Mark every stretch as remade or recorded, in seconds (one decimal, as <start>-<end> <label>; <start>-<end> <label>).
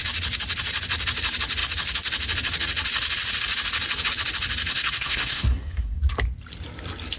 0.0-4.7 recorded; 4.7-6.0 remade; 6.0-7.2 recorded